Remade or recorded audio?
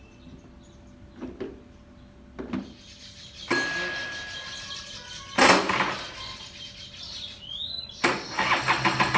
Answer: recorded